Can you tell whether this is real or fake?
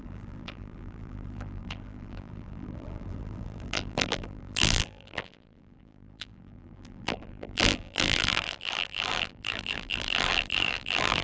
fake